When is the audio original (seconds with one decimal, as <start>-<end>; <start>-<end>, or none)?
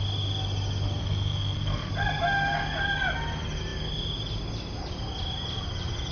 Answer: 0.0-1.0; 1.9-6.1